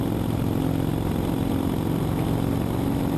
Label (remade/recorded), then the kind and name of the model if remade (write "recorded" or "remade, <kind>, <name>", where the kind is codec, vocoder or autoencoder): recorded